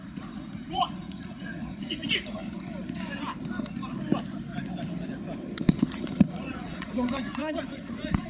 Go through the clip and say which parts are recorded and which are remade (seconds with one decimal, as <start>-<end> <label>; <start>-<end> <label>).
0.0-2.4 remade; 2.4-5.7 recorded; 5.7-8.3 remade